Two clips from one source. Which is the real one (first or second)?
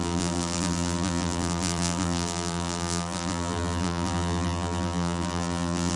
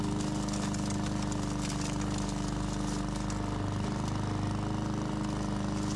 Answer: second